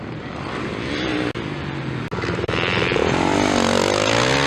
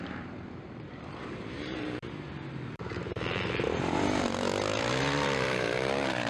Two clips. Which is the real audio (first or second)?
first